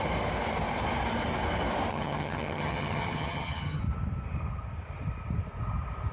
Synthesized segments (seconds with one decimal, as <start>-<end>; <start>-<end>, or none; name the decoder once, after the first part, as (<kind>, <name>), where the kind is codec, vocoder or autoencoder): 1.9-3.8 (vocoder, HiFi-GAN)